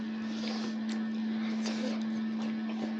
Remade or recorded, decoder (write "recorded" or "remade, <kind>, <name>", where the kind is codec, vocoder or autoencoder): recorded